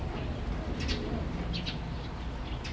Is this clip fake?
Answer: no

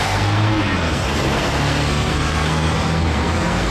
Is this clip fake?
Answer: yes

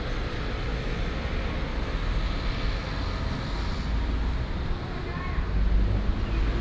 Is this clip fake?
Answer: no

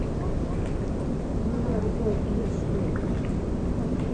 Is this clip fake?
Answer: no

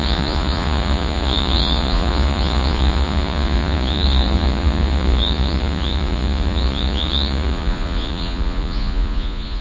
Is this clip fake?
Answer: yes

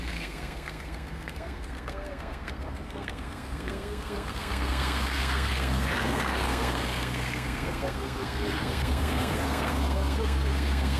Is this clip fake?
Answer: yes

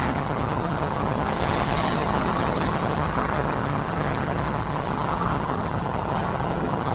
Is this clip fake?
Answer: yes